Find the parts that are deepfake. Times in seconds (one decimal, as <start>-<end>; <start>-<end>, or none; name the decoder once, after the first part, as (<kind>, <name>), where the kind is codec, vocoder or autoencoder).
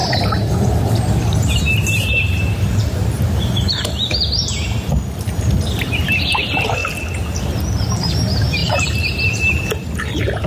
0.0-6.8 (vocoder, BigVGAN v2); 7.8-10.5